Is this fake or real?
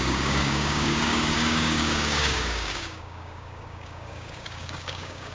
fake